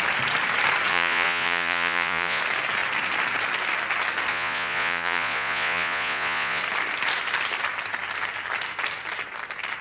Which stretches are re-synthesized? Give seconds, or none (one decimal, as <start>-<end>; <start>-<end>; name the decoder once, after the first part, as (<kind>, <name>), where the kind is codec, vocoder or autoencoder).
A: 0.9-2.4 (vocoder, Vocos); 4.3-6.6